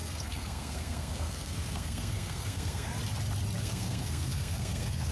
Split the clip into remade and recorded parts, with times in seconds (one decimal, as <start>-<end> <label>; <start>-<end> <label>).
0.0-2.9 remade; 2.9-3.6 recorded; 3.6-5.1 remade